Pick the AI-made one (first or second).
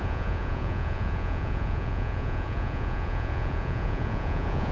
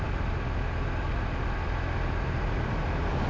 first